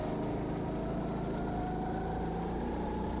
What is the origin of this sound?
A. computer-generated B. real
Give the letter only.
B